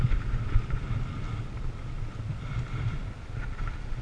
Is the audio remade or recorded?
recorded